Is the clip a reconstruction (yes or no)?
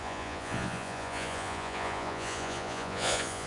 yes